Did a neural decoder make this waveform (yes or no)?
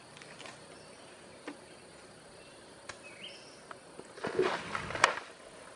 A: no